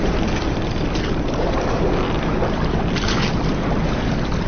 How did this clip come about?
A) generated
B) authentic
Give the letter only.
B